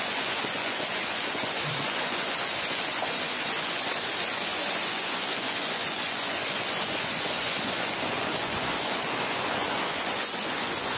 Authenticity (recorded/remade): remade